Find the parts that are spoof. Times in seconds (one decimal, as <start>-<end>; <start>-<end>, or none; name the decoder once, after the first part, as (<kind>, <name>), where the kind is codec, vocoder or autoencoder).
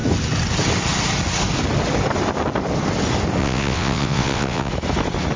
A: 3.4-4.7 (vocoder, WaveNeXt)